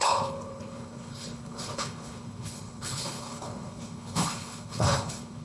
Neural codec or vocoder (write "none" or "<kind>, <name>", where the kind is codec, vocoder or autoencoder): codec, HILCodec